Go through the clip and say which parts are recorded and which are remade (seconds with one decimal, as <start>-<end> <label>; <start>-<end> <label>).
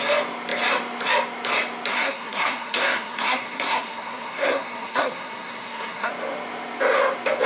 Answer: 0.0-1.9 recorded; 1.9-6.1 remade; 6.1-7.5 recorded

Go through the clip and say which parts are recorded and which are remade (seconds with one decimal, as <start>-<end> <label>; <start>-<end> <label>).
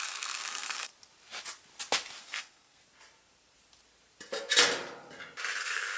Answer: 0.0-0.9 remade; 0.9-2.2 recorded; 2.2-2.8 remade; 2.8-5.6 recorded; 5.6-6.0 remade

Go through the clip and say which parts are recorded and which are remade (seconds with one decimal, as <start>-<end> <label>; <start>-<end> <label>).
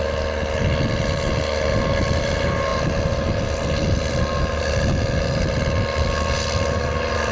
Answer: 0.0-7.3 recorded